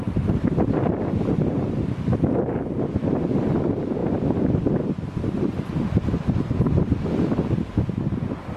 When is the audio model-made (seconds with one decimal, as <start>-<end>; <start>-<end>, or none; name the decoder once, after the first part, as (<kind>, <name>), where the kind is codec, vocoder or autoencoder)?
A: 0.0-2.6 (vocoder, BigVGAN v2); 3.6-4.0; 8.1-8.6